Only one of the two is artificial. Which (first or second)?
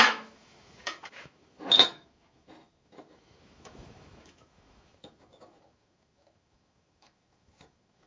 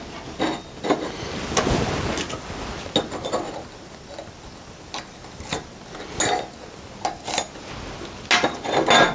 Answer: first